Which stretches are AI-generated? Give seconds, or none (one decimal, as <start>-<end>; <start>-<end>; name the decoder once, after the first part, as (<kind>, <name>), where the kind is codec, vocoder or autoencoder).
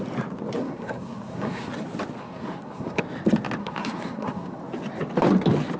0.6-1.7 (codec, SNAC); 2.2-3.0; 3.6-4.6